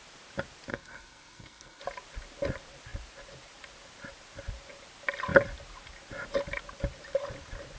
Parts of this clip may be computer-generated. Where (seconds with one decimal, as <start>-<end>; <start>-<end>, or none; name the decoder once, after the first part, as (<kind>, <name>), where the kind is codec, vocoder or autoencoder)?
0.7-1.8 (codec, SNAC)